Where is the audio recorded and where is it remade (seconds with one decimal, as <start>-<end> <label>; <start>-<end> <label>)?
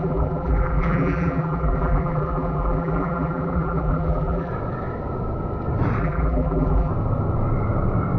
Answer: 0.0-4.5 remade; 4.5-6.0 recorded; 6.0-6.9 remade; 6.9-8.2 recorded